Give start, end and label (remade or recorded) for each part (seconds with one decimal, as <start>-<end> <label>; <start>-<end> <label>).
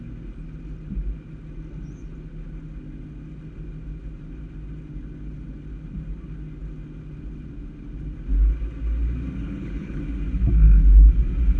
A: 0.0-9.4 recorded; 9.4-10.0 remade; 10.0-11.6 recorded